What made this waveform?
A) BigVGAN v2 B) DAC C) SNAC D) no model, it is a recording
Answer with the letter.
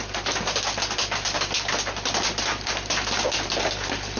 D